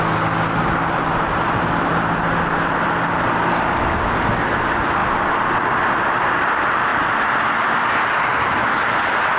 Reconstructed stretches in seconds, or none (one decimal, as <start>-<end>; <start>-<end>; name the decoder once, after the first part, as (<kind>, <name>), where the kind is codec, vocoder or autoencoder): none